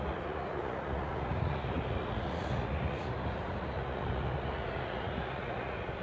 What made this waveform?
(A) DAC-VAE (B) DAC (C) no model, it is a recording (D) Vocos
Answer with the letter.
D